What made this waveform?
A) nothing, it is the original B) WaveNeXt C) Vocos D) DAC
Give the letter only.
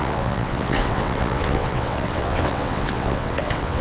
B